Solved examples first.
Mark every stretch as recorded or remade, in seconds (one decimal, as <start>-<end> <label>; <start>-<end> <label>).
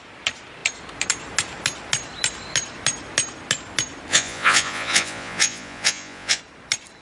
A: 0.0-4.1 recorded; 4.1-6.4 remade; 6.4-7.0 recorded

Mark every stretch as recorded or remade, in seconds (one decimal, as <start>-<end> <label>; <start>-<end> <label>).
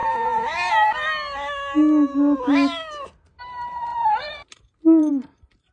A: 0.0-3.4 recorded; 3.4-5.7 remade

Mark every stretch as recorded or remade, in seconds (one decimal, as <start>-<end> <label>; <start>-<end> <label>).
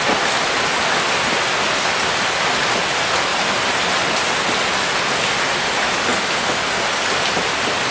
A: 0.0-7.9 recorded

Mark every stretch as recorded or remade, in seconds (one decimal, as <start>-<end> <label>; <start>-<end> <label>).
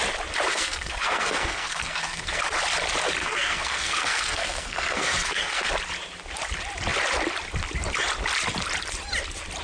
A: 0.0-0.5 recorded; 0.5-2.4 remade; 2.4-3.2 recorded; 3.2-5.7 remade; 5.7-9.6 recorded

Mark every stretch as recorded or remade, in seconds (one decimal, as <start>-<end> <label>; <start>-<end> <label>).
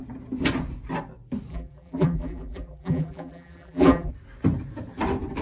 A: 0.0-1.5 recorded; 1.5-4.1 remade; 4.1-5.4 recorded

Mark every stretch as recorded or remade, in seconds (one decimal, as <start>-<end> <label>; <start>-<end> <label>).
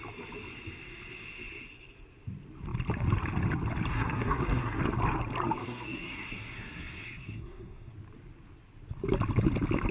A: 0.0-3.9 recorded; 3.9-4.8 remade; 4.8-5.6 recorded; 5.6-7.9 remade; 7.9-9.9 recorded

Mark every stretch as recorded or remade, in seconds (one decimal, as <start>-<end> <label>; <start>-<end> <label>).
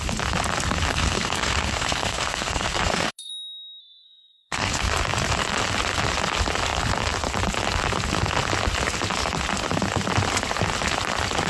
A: 0.0-0.9 recorded; 0.9-3.3 remade; 3.3-3.8 recorded; 3.8-4.9 remade; 4.9-11.5 recorded